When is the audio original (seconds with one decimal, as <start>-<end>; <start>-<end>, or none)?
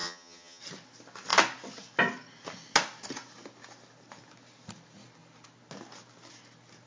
0.6-6.9